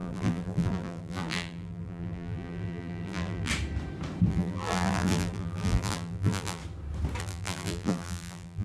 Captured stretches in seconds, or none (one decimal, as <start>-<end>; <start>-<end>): 3.5-4.3; 6.6-7.2